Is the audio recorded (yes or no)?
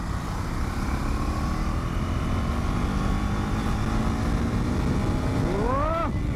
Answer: yes